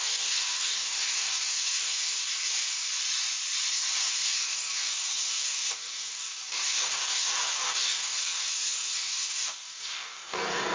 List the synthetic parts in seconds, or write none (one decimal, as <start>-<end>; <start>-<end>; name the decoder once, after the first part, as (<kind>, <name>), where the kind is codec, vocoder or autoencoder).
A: 0.0-2.9 (codec, DAC); 3.7-10.7